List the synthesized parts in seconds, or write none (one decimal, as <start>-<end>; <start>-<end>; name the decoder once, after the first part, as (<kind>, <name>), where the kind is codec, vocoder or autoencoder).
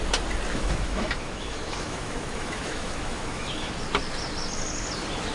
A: 0.5-3.7 (autoencoder, DAC-VAE)